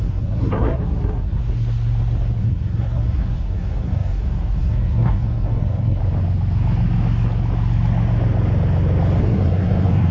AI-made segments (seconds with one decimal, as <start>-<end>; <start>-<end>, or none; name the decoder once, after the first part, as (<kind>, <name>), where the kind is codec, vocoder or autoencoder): 0.0-1.4 (codec, SNAC); 2.4-6.0; 9.2-10.1